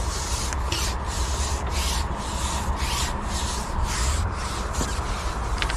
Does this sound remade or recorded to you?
recorded